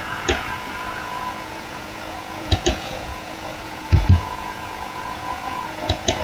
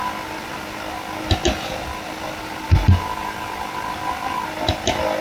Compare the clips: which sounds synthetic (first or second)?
first